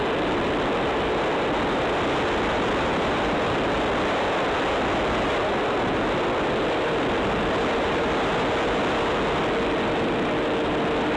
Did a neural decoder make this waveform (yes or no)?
no